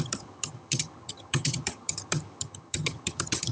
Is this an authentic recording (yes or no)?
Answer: no